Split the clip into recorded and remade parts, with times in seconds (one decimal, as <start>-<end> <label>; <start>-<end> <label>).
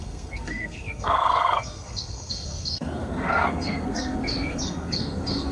0.0-5.5 remade